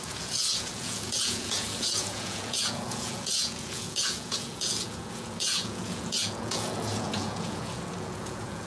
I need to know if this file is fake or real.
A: fake